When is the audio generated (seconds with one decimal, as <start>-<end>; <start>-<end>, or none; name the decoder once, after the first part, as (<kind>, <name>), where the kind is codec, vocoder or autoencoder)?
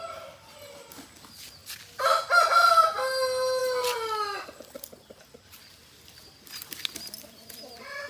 none